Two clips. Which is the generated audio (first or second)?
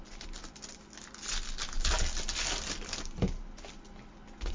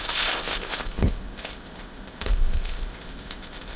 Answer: second